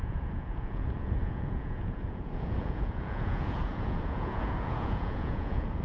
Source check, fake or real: fake